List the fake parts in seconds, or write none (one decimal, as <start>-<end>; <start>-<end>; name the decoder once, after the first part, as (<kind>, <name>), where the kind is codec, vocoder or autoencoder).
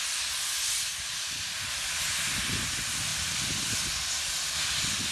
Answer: none